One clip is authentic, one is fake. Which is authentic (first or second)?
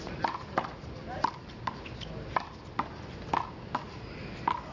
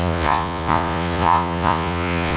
first